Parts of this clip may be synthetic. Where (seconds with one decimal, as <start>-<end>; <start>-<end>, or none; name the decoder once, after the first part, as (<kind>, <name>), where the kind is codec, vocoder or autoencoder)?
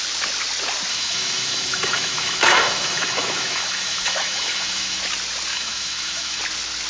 0.9-5.0 (autoencoder, DAC-VAE); 5.5-6.4